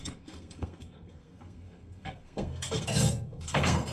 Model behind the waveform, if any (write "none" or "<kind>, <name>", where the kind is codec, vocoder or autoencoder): codec, SNAC